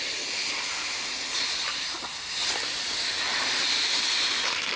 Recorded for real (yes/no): yes